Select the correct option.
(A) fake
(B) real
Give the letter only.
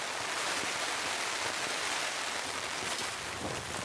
B